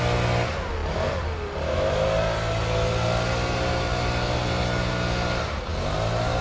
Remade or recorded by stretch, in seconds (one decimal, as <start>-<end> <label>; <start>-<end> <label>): 0.0-6.4 recorded